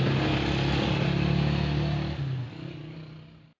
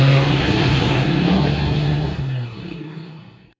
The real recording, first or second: first